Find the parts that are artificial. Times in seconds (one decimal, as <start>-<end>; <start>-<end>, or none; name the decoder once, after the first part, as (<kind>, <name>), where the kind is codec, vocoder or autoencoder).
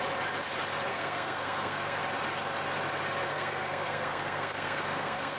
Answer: 0.9-2.0 (codec, SNAC); 3.3-5.4